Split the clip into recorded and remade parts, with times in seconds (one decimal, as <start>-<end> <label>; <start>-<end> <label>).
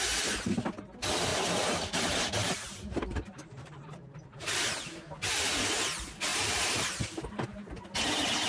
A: 0.0-1.3 recorded; 1.3-5.3 remade; 5.3-6.3 recorded; 6.3-7.3 remade; 7.3-8.5 recorded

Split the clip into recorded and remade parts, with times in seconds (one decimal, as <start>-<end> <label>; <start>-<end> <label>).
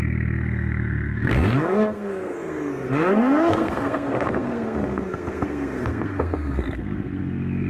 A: 0.0-7.7 remade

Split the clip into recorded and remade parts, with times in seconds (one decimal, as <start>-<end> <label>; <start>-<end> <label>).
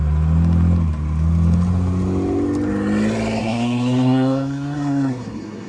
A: 0.0-3.4 recorded; 3.4-5.7 remade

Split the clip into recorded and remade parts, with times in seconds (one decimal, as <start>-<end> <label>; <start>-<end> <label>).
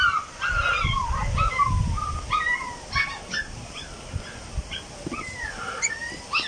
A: 0.0-6.5 recorded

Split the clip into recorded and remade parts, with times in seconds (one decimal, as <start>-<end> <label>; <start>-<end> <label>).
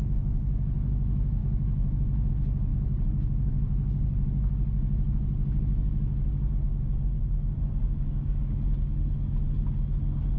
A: 0.0-1.4 recorded; 1.4-2.3 remade; 2.3-10.4 recorded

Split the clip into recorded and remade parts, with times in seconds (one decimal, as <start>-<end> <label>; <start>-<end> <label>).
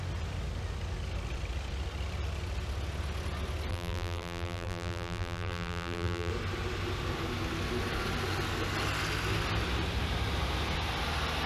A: 0.0-3.7 recorded; 3.7-6.3 remade; 6.3-11.5 recorded